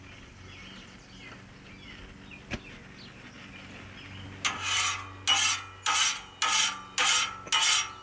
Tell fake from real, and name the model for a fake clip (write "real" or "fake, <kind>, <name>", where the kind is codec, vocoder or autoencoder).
real